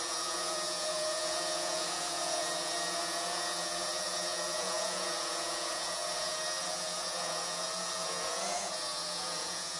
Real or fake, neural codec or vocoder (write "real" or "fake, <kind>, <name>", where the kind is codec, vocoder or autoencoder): fake, vocoder, Vocos